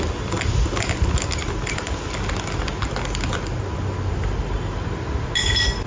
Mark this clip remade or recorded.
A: recorded